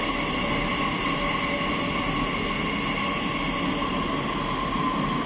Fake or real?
real